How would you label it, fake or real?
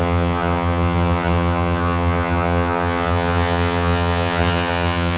fake